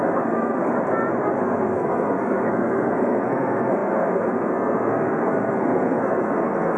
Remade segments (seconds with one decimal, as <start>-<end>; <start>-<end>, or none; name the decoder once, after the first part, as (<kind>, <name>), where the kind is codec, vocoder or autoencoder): 0.0-0.7 (codec, SNAC); 1.4-6.8